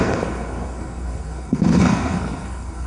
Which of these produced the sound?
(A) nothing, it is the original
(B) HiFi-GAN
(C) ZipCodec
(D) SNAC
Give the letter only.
D